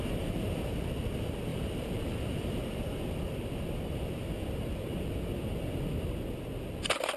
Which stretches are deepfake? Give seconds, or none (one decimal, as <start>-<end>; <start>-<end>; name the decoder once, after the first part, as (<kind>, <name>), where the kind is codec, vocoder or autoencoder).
1.5-2.6 (vocoder, BigVGAN v2)